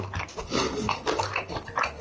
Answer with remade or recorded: recorded